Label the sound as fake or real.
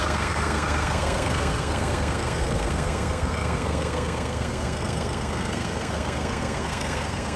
fake